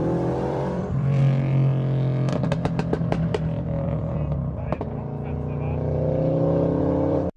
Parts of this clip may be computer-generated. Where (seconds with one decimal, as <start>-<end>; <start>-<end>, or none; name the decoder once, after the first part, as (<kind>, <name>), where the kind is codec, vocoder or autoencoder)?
0.0-1.2 (vocoder, BigVGAN v2); 3.1-4.7; 6.8-7.4